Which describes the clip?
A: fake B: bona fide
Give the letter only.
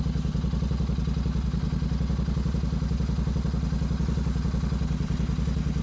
B